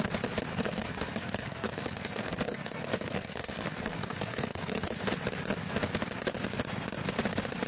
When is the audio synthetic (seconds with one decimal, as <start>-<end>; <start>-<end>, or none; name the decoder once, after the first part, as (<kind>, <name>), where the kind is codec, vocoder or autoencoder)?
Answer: 0.5-5.1 (codec, SNAC)